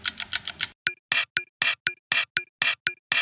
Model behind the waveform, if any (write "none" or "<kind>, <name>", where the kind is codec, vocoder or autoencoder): none